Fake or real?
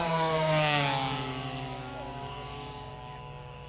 fake